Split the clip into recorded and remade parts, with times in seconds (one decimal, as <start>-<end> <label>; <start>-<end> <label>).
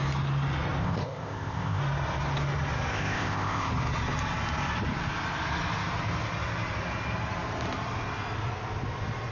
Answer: 0.0-0.8 recorded; 0.8-1.8 remade; 1.8-2.9 recorded; 2.9-3.7 remade; 3.7-9.3 recorded